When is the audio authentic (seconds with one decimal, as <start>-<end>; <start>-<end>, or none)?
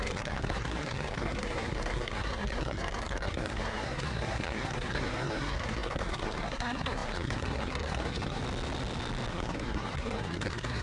8.4-9.3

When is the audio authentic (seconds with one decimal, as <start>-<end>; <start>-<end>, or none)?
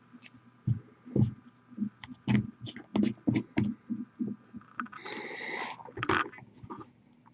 0.0-7.3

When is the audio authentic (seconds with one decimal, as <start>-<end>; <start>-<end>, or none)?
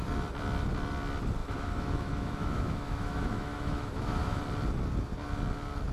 0.0-1.4; 4.4-5.9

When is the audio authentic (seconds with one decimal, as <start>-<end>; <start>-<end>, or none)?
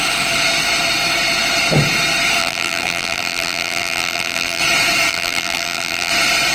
0.0-2.4; 4.6-5.1; 6.1-6.5